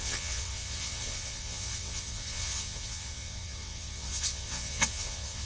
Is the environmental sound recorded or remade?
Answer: remade